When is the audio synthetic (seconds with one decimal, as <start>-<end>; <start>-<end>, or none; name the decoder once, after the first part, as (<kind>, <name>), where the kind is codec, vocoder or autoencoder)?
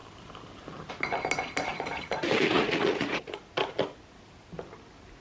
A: 1.7-3.4 (vocoder, Vocos)